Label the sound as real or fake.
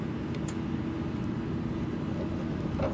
real